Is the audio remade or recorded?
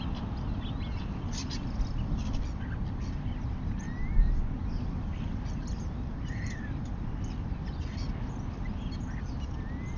recorded